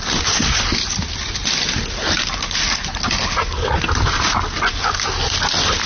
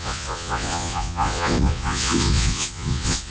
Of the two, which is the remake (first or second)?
second